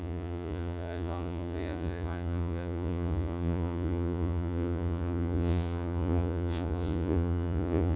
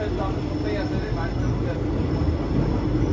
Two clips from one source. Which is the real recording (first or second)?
second